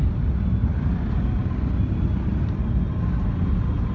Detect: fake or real real